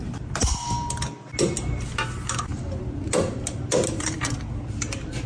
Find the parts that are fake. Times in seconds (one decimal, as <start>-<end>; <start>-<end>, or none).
none